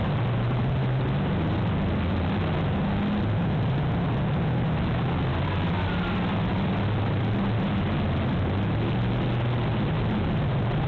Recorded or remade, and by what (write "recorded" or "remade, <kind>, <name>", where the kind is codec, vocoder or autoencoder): recorded